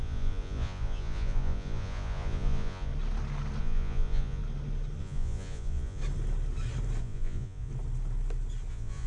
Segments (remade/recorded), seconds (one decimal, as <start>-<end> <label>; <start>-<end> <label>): 0.0-2.9 remade; 2.9-3.6 recorded; 3.6-4.4 remade; 4.4-5.0 recorded; 5.0-6.0 remade; 6.0-7.0 recorded; 7.0-7.7 remade; 7.7-8.7 recorded; 8.7-9.1 remade